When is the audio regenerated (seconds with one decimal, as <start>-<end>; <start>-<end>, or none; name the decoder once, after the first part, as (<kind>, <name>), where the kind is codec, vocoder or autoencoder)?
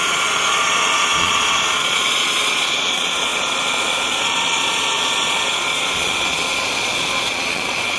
0.0-8.0 (vocoder, Vocos)